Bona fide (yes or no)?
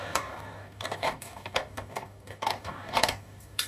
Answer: no